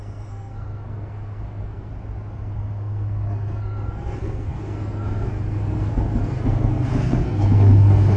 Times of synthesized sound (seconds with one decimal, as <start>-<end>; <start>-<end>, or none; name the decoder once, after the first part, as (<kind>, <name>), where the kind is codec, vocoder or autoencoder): 0.0-1.9 (codec, SNAC); 2.4-8.2